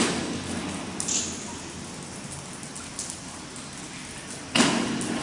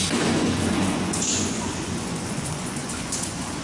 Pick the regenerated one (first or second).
second